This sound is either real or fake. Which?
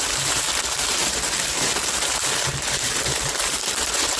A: fake